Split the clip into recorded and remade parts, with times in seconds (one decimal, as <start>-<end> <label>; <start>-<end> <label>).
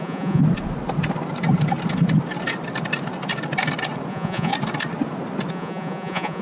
0.0-0.4 remade; 0.4-4.1 recorded; 4.1-4.5 remade; 4.5-5.5 recorded; 5.5-6.4 remade